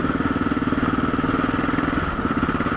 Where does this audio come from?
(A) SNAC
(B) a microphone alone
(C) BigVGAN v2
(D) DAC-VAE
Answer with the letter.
B